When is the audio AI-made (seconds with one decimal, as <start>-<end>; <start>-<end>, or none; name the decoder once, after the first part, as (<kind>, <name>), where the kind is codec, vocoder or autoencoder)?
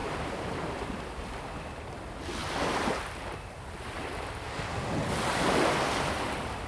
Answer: 0.0-1.0 (vocoder, BigVGAN v2)